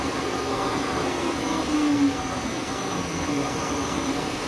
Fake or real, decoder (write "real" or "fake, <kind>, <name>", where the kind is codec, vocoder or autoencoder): fake, codec, SNAC